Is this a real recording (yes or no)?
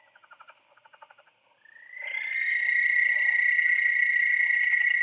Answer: no